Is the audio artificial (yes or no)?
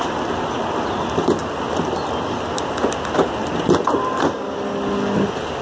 no